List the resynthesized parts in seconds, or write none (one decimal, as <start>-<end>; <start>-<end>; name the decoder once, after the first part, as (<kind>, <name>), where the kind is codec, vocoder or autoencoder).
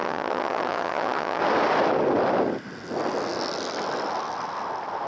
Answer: 0.0-1.4 (vocoder, HiFi-GAN)